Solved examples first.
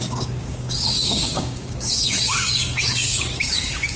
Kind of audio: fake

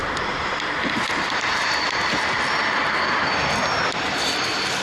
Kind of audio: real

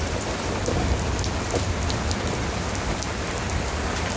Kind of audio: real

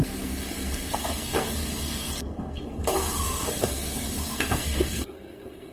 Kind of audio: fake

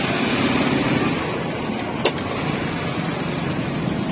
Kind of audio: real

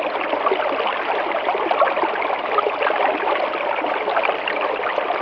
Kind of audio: real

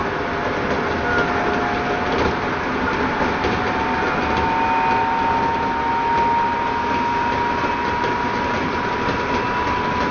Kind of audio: real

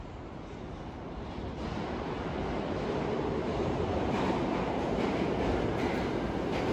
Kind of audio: real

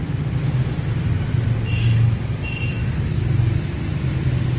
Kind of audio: real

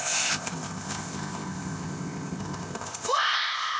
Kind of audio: fake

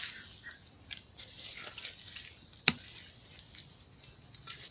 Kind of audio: real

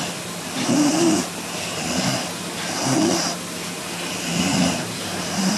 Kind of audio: real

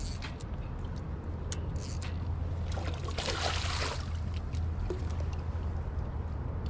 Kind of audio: real